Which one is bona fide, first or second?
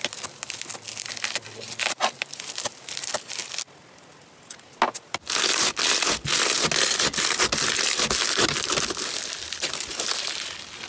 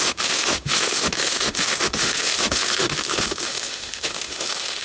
first